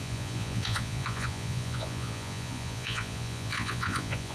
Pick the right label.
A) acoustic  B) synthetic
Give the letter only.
B